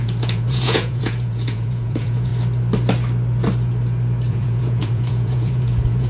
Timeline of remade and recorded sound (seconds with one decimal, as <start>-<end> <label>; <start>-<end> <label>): 0.0-2.3 remade; 2.3-4.3 recorded; 4.3-6.1 remade